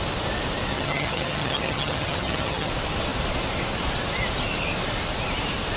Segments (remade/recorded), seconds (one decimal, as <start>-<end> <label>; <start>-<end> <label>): 0.0-0.7 recorded; 0.7-2.7 remade; 2.7-5.8 recorded